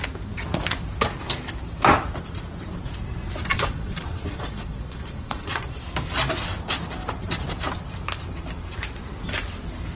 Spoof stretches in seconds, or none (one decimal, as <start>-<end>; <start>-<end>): 3.5-5.8